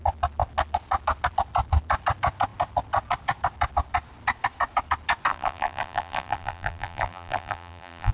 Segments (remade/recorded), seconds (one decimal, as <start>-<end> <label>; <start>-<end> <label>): 0.0-5.3 recorded; 5.3-8.1 remade